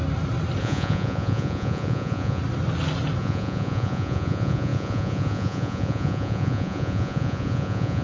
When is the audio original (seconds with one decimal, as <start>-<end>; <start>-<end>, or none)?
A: 0.0-0.6; 2.4-3.2